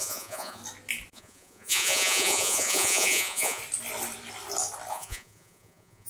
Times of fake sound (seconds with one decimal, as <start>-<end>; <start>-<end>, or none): 0.0-0.6; 1.1-3.6; 4.9-6.1